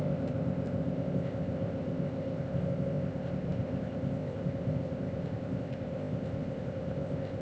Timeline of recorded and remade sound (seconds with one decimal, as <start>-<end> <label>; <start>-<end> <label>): 0.0-7.4 remade